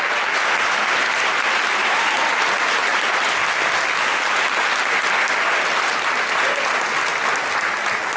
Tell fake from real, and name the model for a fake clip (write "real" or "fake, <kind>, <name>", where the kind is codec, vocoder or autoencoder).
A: real